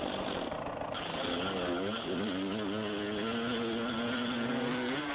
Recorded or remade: recorded